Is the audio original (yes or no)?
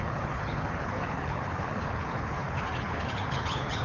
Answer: no